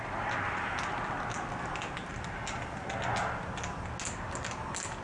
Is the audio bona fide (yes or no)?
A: yes